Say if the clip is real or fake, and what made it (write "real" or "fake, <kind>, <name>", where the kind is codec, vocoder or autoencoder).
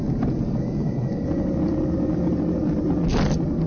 real